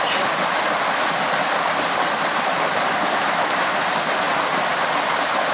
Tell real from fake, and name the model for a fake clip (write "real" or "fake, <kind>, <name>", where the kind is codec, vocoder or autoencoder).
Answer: real